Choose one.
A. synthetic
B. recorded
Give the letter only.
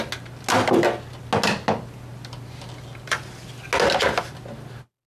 B